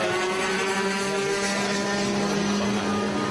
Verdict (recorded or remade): recorded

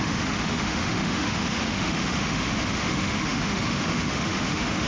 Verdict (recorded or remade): remade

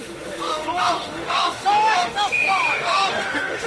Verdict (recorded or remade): remade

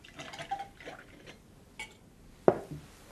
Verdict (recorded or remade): recorded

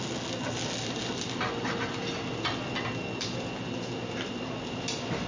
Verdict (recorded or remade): recorded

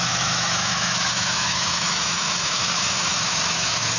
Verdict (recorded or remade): remade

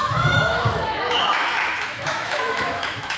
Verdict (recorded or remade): remade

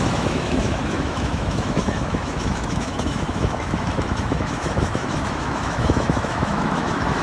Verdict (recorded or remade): remade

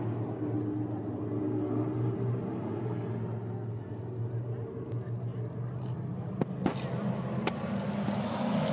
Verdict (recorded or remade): recorded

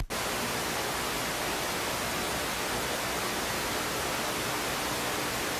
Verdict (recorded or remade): recorded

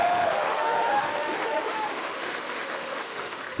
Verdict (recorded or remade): remade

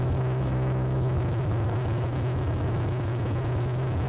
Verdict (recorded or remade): remade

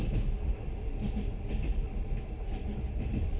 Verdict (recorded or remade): recorded